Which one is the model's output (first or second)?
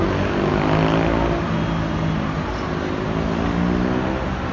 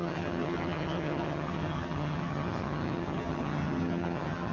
second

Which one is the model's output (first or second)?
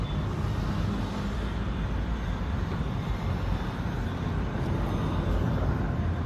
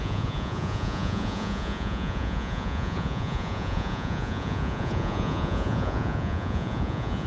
second